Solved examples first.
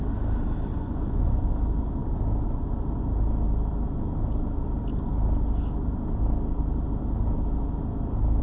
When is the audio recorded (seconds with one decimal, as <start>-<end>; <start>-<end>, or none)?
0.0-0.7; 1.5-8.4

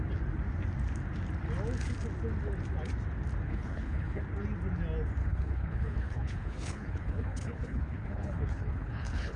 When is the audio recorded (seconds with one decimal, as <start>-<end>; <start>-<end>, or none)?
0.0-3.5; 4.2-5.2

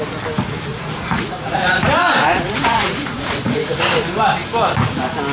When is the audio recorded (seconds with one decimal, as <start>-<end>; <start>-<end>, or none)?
0.0-0.7; 3.9-5.3

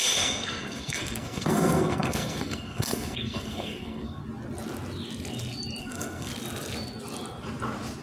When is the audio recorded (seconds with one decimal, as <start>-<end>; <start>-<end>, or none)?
4.2-5.8; 6.3-8.0

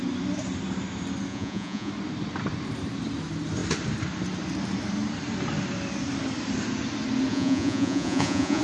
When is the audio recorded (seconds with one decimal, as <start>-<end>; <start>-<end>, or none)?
0.0-1.3; 1.9-7.3

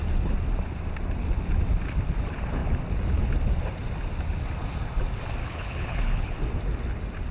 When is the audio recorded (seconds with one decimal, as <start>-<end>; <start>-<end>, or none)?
0.0-5.4; 6.4-7.3